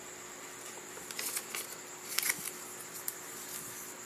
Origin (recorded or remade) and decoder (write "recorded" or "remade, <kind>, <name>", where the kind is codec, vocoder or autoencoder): recorded